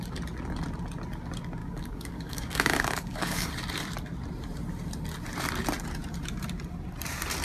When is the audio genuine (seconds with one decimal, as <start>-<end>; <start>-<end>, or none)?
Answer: 0.0-1.6; 3.5-7.4